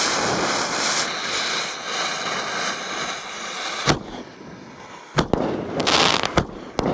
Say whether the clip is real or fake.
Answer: real